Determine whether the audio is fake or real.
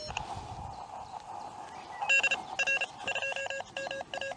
real